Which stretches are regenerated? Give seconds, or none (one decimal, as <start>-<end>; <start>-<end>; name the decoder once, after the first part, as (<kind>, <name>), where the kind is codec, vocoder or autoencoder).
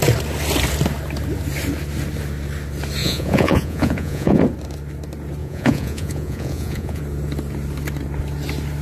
3.0-4.4 (vocoder, Vocos); 5.4-7.0